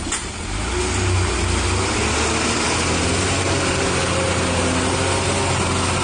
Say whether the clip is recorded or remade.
recorded